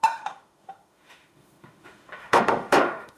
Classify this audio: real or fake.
fake